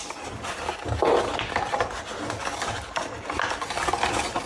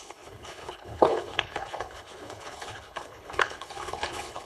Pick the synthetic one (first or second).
second